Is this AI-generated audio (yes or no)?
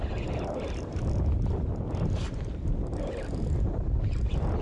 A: no